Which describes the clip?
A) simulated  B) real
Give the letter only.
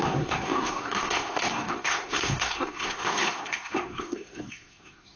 A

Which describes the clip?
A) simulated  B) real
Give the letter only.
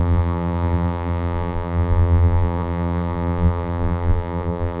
A